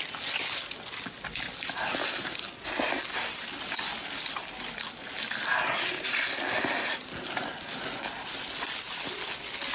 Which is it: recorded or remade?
recorded